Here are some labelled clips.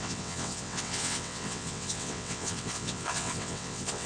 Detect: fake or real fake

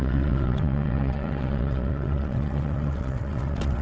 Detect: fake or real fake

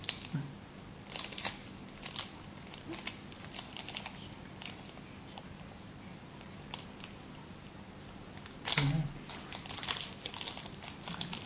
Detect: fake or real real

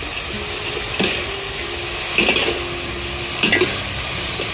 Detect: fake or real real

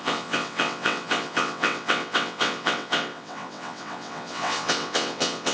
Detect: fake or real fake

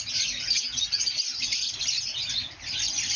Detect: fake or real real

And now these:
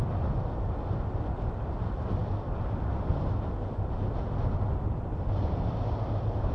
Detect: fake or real real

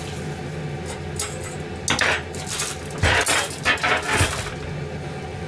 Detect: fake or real real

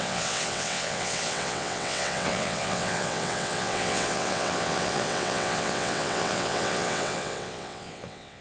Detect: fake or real fake